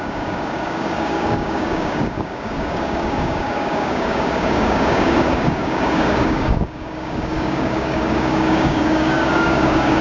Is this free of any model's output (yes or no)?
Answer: no